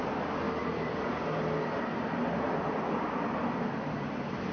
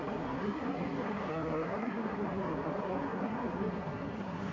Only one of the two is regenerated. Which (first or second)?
second